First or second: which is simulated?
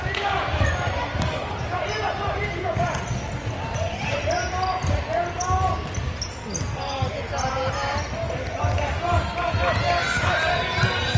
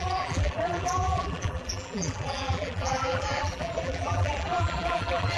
second